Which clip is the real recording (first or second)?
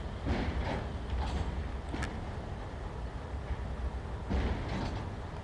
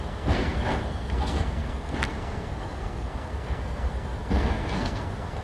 first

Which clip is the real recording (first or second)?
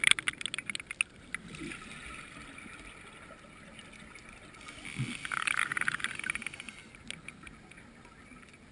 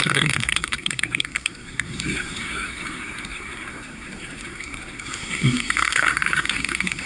first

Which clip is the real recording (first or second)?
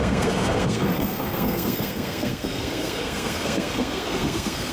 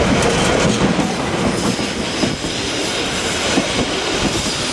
second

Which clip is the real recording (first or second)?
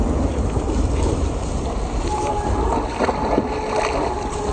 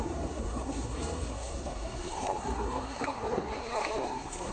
first